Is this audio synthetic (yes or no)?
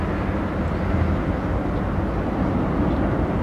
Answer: no